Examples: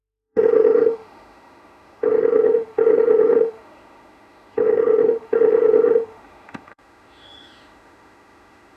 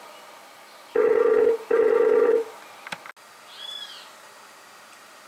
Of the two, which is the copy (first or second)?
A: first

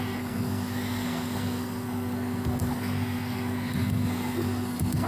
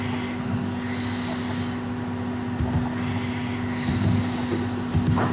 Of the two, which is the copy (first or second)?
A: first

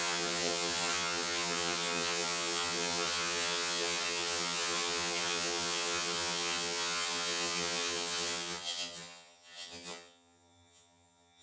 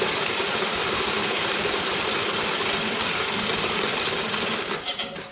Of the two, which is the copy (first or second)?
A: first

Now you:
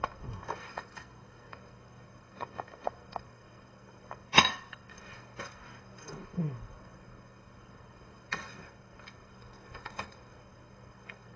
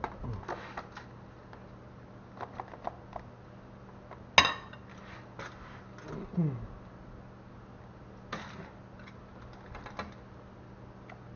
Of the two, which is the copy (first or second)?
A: first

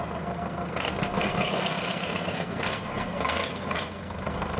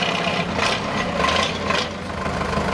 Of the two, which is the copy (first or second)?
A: first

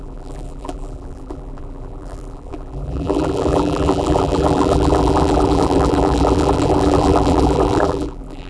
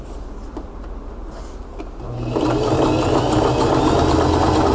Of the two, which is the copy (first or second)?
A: first